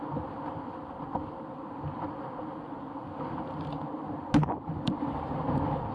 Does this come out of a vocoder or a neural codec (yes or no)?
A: no